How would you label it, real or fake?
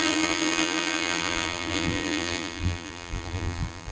fake